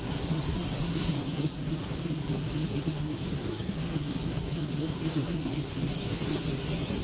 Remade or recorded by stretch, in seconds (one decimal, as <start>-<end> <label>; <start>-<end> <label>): 0.0-7.0 remade